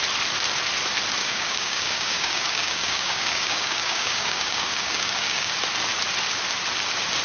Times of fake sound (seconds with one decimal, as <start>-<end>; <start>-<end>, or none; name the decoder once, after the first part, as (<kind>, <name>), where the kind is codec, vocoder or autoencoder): 1.2-5.5 (codec, DAC)